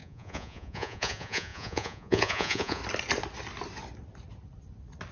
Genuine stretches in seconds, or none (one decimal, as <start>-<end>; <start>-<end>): 2.8-5.1